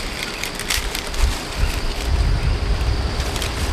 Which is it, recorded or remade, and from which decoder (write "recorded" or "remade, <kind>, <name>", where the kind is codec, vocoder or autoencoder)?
recorded